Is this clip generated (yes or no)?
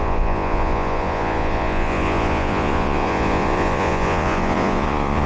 yes